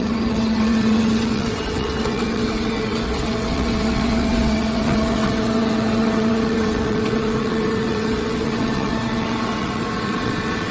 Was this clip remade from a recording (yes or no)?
yes